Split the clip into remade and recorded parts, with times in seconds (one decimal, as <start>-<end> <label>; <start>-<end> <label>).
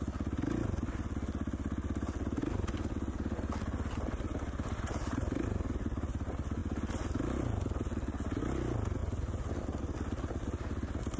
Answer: 0.0-11.2 recorded